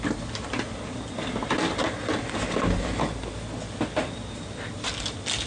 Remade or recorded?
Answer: recorded